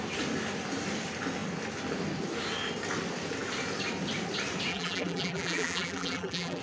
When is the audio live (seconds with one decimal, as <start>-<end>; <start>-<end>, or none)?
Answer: 0.0-4.7

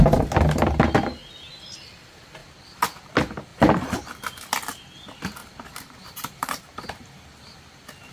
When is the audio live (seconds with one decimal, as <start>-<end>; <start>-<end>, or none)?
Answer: 0.0-3.5; 4.1-5.4; 7.1-8.1

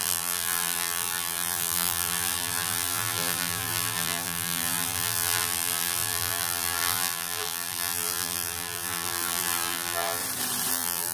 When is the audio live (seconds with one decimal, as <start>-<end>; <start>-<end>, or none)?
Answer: 10.2-10.7